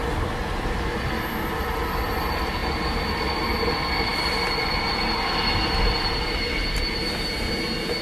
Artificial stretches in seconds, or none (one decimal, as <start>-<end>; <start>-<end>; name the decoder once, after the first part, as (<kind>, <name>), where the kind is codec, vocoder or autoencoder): none